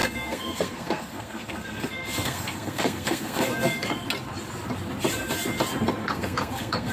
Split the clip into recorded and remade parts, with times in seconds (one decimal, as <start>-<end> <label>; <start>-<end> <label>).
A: 0.0-4.1 remade; 4.1-6.0 recorded; 6.0-6.9 remade

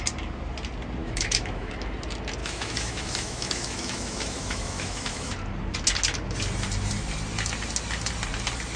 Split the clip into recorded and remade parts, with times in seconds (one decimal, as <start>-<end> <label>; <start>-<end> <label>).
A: 0.0-1.0 recorded; 1.0-1.7 remade; 1.7-2.4 recorded; 2.4-5.3 remade; 5.3-8.8 recorded

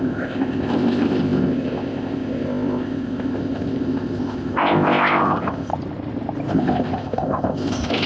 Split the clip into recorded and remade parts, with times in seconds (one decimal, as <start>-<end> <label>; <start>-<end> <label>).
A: 0.0-5.7 remade; 5.7-6.5 recorded; 6.5-8.1 remade

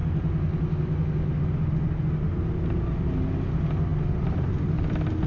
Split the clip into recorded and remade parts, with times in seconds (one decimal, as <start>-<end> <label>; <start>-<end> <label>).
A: 0.0-5.3 recorded

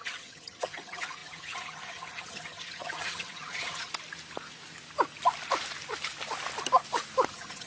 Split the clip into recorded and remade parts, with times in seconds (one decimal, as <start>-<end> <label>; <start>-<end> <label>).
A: 0.0-3.9 remade; 3.9-7.3 recorded; 7.3-7.7 remade

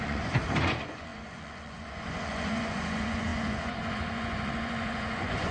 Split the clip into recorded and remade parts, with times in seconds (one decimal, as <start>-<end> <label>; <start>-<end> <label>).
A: 0.0-5.5 remade

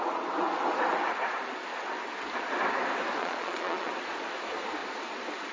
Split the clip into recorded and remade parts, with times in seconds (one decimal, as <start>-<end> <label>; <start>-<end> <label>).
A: 0.0-3.2 recorded; 3.2-3.9 remade; 3.9-5.5 recorded

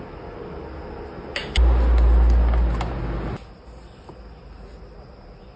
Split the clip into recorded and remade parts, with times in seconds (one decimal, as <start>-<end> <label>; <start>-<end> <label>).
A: 0.0-5.6 recorded